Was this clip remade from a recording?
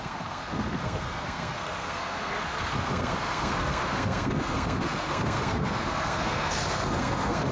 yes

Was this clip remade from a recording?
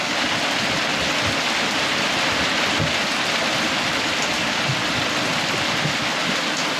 no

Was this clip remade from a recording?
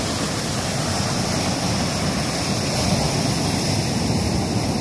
no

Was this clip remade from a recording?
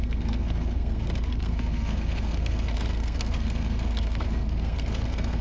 yes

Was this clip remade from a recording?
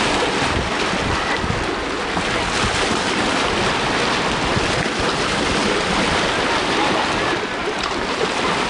no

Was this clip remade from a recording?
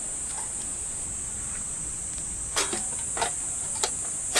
no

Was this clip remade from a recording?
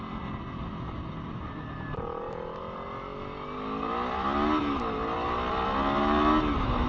no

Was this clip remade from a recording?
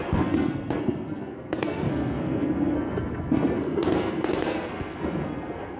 yes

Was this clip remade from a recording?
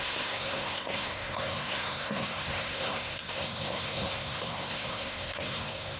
yes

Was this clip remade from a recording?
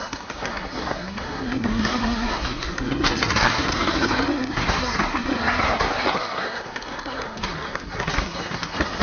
yes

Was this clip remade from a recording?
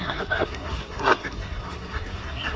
yes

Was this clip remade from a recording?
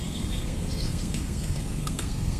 yes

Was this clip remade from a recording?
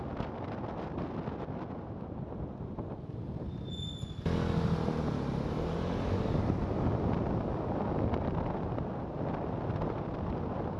no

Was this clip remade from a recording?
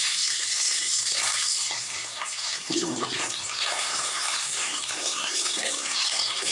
yes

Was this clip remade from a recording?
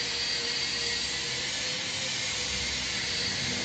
no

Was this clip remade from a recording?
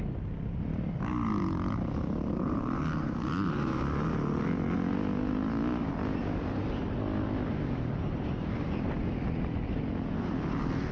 no